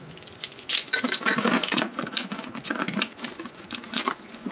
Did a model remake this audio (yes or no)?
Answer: yes